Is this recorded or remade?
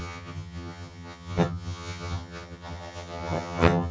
remade